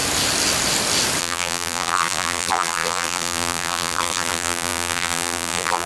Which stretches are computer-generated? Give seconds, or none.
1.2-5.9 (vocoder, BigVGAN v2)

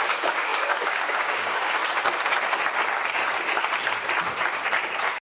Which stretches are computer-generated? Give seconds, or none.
0.0-1.8 (codec, DAC)